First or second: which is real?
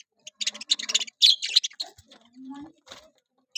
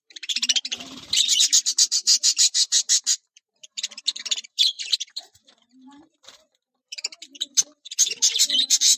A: first